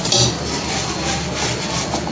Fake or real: real